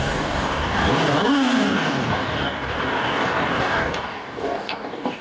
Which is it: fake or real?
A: fake